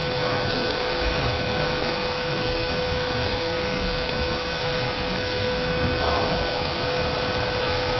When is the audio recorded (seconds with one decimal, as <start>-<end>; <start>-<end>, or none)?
7.0-7.6